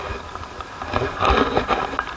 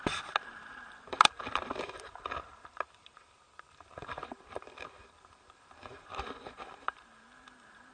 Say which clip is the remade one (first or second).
second